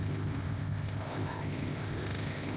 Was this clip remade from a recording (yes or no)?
yes